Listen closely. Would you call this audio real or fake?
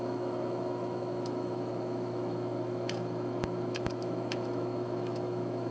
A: fake